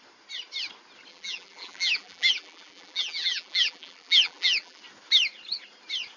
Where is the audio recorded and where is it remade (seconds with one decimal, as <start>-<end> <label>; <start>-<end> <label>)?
0.0-1.1 recorded; 1.1-4.8 remade; 4.8-6.2 recorded